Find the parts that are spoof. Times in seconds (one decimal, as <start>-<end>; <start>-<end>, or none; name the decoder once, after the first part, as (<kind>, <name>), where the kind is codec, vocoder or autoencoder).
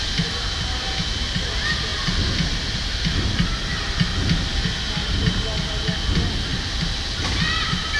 none